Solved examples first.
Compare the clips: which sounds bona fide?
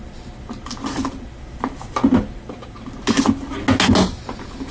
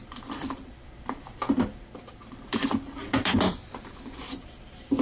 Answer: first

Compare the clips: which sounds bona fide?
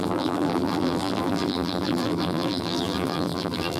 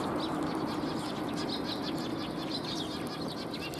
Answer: second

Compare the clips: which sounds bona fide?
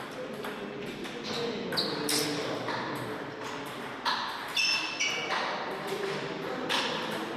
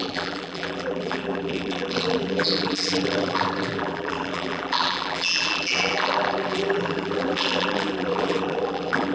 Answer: first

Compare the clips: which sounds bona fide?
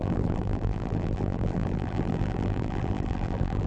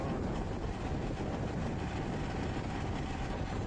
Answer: second